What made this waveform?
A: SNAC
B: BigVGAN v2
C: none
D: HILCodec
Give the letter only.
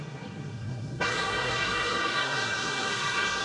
A